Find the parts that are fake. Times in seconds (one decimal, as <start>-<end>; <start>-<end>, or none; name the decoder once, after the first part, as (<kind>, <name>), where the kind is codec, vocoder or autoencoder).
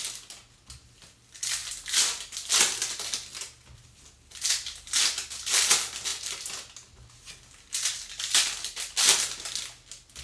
none